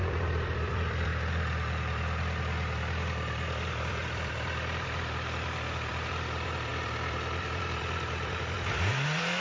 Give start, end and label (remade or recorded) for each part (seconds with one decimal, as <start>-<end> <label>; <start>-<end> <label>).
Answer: 0.0-1.1 remade; 1.1-3.8 recorded; 3.8-9.4 remade